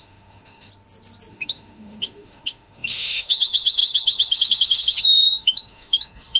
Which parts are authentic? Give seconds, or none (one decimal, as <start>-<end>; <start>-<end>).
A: 0.7-1.3